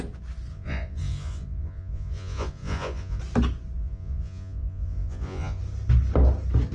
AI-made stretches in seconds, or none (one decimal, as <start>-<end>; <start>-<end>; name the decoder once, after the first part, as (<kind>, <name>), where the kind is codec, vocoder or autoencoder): 0.5-3.2 (vocoder, Vocos); 3.8-5.6